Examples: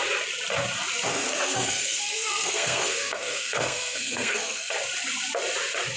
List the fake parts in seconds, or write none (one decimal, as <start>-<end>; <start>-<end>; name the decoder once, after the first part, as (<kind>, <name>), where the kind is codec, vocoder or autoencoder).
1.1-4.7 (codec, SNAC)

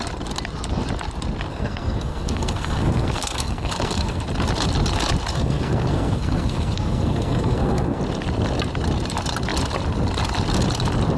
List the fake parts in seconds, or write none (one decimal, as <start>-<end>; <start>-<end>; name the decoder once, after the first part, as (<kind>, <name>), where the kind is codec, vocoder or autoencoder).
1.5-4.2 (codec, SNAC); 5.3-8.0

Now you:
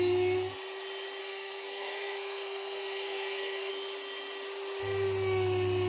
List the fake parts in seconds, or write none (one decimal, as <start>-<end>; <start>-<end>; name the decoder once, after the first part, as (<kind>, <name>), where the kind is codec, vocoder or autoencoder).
1.2-3.7 (codec, SNAC)